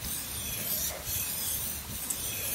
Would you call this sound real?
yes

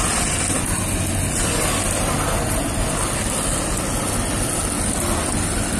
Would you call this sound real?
yes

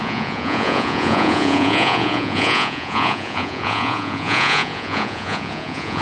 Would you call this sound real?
no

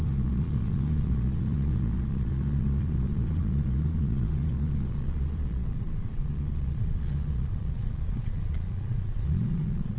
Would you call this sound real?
no